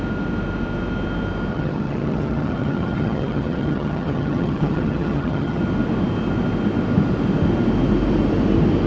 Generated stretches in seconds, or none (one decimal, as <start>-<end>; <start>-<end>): 1.5-5.6